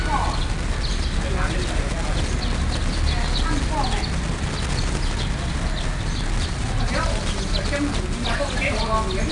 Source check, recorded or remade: recorded